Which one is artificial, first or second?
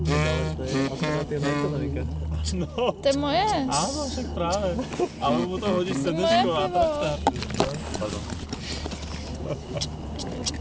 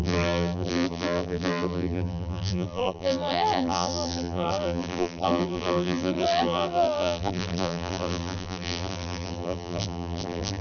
second